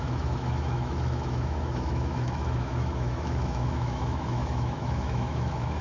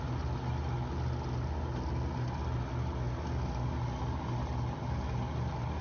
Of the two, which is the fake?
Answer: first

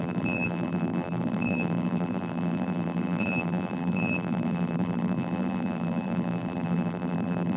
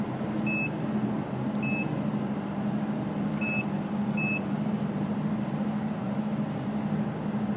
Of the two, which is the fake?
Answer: first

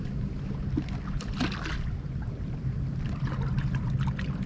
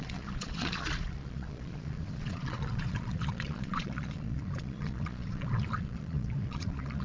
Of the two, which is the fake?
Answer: second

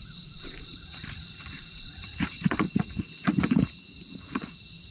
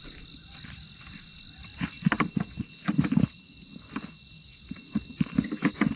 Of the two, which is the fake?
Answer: first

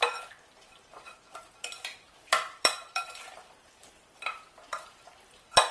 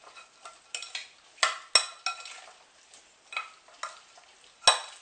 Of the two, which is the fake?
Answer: first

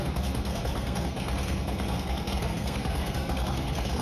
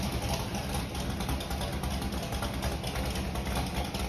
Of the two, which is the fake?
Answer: first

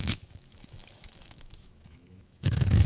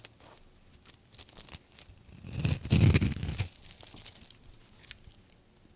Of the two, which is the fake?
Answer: first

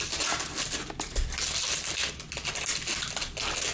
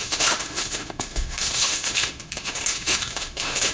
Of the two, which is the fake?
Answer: second